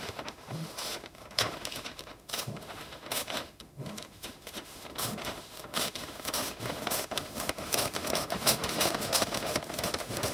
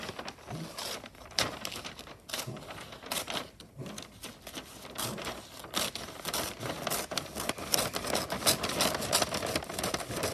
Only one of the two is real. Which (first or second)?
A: second